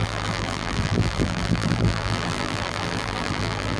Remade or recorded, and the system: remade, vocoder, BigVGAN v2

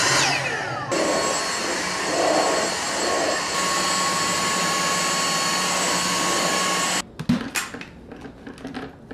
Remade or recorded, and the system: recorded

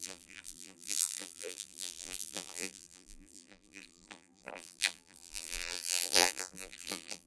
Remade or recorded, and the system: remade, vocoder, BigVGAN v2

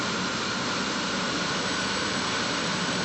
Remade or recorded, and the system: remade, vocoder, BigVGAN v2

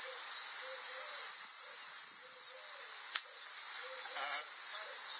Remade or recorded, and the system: recorded